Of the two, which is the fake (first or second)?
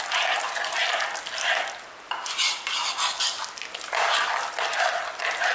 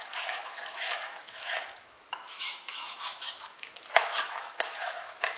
second